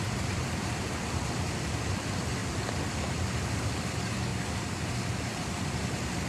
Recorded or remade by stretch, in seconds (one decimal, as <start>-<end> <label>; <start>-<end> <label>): 0.0-2.4 remade; 2.4-3.1 recorded; 3.1-4.3 remade; 4.3-5.2 recorded; 5.2-6.3 remade